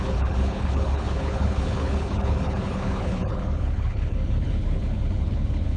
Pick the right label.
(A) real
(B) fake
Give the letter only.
B